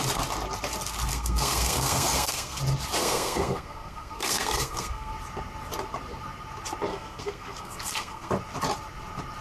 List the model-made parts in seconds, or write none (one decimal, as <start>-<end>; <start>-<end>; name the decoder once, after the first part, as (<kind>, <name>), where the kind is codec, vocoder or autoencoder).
1.1-2.6 (codec, SNAC); 3.0-5.1; 6.9-8.3